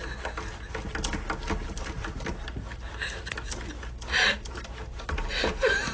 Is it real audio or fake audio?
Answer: real